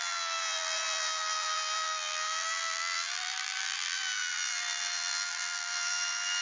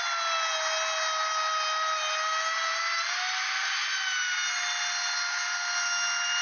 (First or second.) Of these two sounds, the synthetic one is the first